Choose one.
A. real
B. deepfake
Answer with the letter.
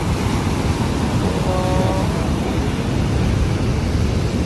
A